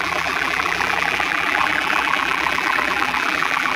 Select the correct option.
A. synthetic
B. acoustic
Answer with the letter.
A